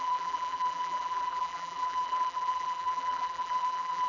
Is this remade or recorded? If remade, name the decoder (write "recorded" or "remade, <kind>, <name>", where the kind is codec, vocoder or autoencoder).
remade, vocoder, BigVGAN v2